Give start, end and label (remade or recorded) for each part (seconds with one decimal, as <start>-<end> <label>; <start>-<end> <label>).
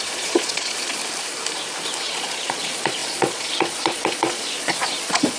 0.0-1.0 remade; 1.0-2.0 recorded; 2.0-5.4 remade